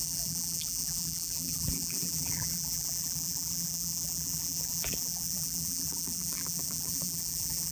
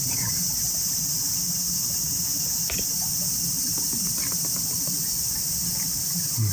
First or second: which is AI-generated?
first